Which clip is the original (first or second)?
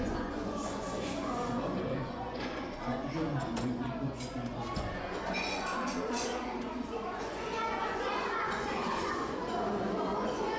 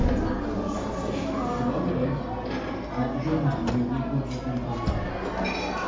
second